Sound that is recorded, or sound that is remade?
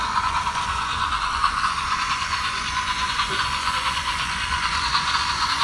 remade